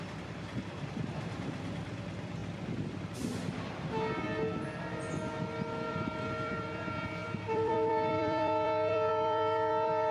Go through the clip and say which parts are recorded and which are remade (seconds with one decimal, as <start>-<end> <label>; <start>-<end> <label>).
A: 0.0-2.4 remade; 2.4-5.9 recorded; 5.9-10.1 remade